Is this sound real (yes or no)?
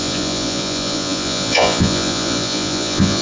no